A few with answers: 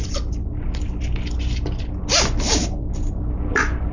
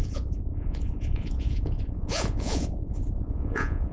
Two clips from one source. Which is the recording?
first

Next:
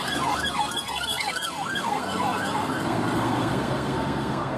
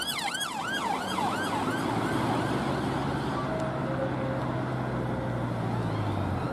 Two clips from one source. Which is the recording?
second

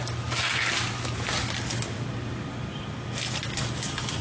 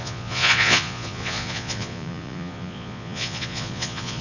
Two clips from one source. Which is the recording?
first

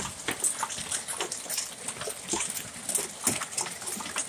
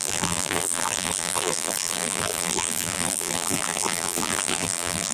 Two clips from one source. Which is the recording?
first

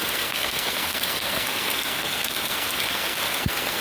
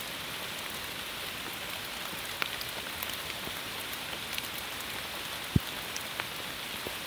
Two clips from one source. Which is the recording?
second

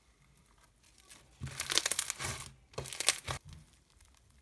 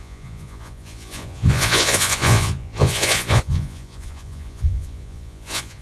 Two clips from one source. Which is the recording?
first